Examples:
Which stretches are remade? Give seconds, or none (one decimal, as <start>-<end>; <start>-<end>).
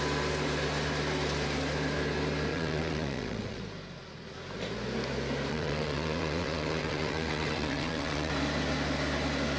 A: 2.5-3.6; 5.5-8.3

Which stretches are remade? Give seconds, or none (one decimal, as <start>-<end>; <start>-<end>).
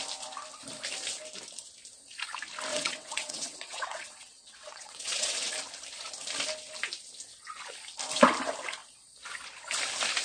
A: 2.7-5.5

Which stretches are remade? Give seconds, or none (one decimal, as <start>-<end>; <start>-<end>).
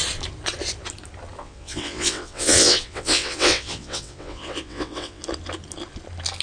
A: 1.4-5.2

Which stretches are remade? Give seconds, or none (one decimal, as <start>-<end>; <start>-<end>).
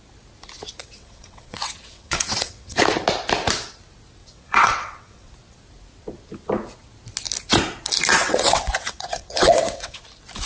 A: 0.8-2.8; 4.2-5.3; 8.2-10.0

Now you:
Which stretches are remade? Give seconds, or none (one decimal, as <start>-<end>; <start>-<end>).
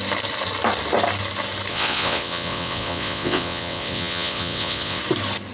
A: 1.7-5.0